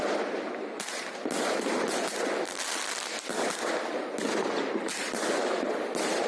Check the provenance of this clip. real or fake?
real